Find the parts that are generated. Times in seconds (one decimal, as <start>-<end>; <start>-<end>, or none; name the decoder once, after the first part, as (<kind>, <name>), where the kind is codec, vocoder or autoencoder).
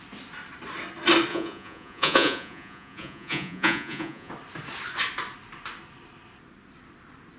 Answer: 1.3-4.3 (vocoder, Vocos)